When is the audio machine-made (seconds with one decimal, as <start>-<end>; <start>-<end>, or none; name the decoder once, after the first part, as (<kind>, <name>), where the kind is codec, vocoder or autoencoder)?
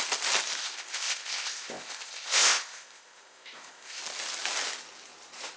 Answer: 0.6-4.0 (codec, ZipCodec)